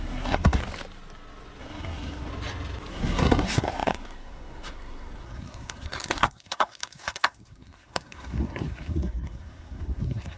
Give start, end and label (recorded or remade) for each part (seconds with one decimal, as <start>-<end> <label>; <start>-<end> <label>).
0.0-0.6 remade; 0.6-1.6 recorded; 1.6-2.3 remade; 2.3-2.9 recorded; 2.9-10.4 remade